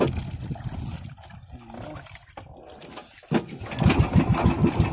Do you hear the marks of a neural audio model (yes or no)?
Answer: no